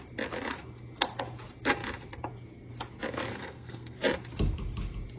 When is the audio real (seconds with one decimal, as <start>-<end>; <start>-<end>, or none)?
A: 0.0-3.3; 4.0-5.2